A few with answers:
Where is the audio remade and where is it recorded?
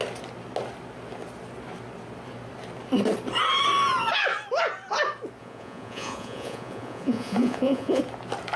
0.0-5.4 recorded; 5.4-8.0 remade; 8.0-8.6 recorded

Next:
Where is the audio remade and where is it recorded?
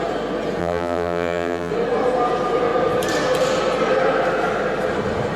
0.0-0.6 recorded; 0.6-1.7 remade; 1.7-5.4 recorded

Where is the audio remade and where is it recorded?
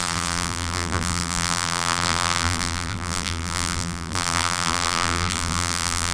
0.0-6.1 remade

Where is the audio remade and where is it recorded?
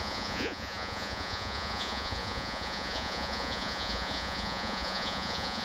0.0-5.6 remade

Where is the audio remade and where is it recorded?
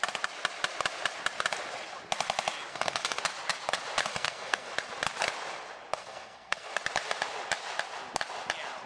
0.0-2.7 recorded; 2.7-3.2 remade; 3.2-4.1 recorded; 4.1-4.7 remade; 4.7-6.0 recorded; 6.0-6.7 remade; 6.7-8.9 recorded